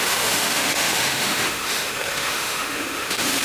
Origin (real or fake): fake